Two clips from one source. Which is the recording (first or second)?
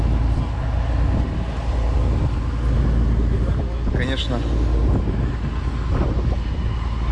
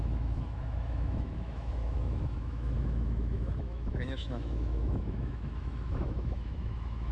first